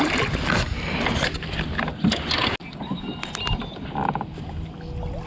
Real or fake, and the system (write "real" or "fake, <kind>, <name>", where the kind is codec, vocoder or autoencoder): real